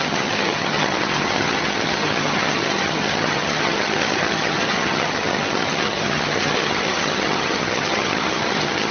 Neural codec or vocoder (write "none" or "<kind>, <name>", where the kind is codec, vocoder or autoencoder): vocoder, HiFi-GAN